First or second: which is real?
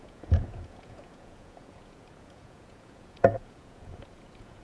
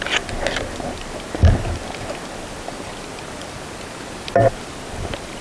second